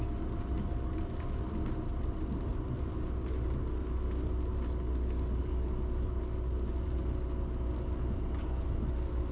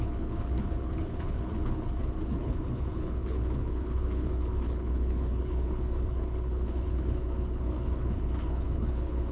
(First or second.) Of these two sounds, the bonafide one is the first